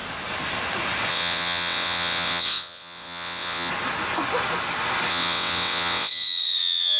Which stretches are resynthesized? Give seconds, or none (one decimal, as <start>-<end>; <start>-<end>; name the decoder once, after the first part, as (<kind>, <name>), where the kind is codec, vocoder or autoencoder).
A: 1.1-3.7 (vocoder, WaveNeXt); 5.1-7.0